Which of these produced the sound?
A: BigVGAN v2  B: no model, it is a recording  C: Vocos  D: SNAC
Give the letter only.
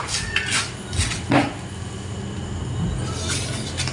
B